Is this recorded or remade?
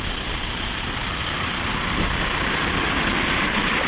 remade